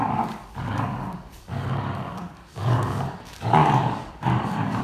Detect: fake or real fake